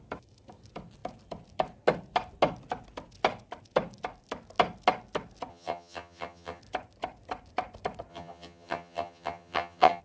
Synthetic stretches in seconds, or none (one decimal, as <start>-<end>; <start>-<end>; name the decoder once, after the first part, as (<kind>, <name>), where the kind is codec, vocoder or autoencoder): 5.5-6.6 (vocoder, HiFi-GAN); 8.1-10.0